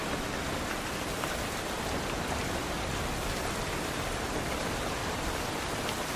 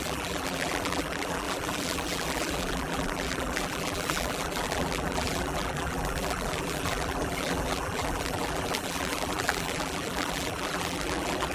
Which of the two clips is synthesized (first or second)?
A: second